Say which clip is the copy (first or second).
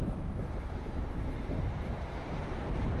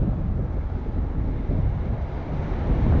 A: first